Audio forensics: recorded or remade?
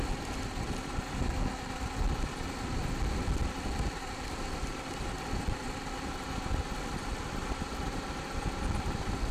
recorded